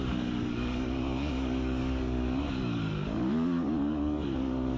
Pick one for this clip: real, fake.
fake